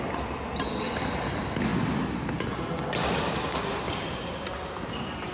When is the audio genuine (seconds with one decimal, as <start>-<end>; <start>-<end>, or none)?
0.0-5.3